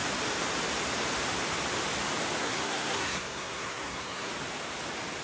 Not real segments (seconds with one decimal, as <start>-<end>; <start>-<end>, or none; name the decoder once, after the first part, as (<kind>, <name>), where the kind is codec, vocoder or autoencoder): 2.4-4.3 (codec, SNAC)